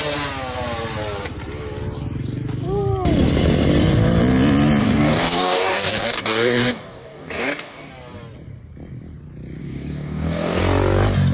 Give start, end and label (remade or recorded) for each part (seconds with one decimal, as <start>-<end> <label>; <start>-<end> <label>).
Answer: 0.0-4.8 recorded; 4.8-7.9 remade; 7.9-9.6 recorded; 9.6-10.6 remade; 10.6-11.3 recorded